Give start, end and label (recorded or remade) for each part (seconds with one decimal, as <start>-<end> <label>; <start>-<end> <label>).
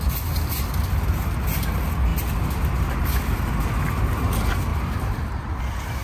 0.0-4.7 recorded; 4.7-5.6 remade; 5.6-6.0 recorded